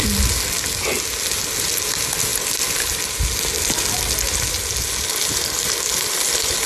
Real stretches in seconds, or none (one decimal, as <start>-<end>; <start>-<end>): 0.0-6.7